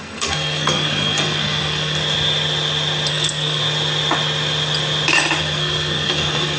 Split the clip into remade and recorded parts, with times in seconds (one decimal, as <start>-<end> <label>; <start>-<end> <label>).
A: 0.0-2.0 remade; 2.0-3.1 recorded; 3.1-3.6 remade; 3.6-5.4 recorded; 5.4-6.6 remade